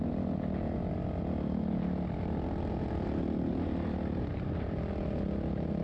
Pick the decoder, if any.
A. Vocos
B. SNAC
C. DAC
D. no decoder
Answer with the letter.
D